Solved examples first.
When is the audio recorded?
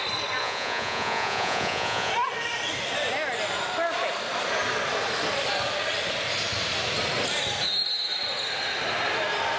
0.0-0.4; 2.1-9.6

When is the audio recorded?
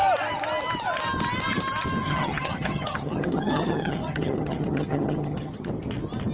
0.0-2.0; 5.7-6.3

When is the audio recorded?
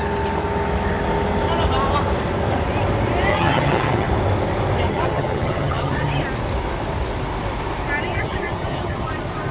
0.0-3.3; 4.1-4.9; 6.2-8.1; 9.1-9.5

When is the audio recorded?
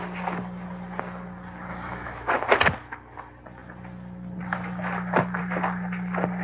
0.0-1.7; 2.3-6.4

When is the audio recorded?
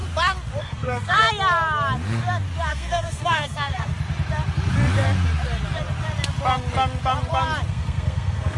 0.0-0.6; 1.2-2.7; 3.9-7.7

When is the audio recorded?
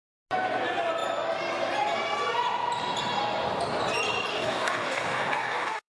0.0-4.3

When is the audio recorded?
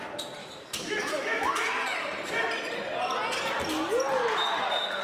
0.0-0.4; 1.7-5.0